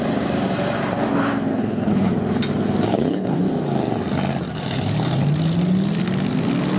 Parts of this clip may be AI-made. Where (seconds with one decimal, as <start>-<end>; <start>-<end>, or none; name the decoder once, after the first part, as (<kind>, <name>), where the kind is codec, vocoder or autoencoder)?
1.5-2.1 (codec, HILCodec); 2.9-3.4